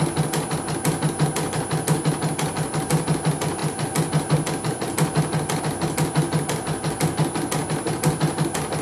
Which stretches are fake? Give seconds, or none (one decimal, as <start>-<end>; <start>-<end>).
none